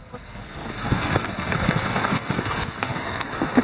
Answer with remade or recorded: remade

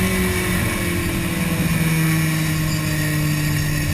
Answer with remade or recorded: recorded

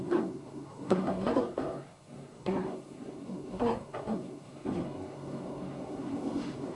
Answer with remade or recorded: remade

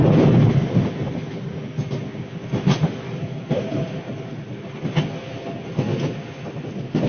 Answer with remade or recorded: recorded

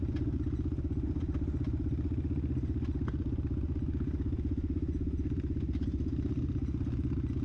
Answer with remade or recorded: recorded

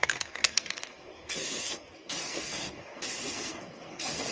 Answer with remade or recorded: remade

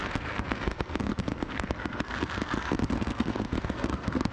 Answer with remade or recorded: remade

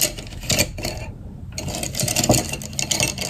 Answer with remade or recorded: recorded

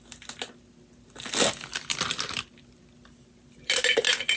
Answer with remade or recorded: recorded